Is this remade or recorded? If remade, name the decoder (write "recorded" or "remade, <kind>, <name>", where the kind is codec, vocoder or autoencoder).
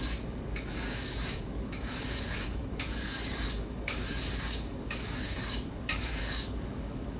remade, codec, DAC